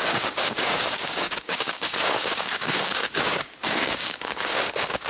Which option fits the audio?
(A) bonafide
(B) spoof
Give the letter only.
B